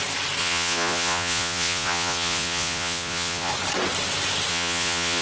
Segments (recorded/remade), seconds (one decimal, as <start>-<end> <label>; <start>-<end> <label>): 0.0-0.4 recorded; 0.4-3.5 remade; 3.5-4.5 recorded; 4.5-5.2 remade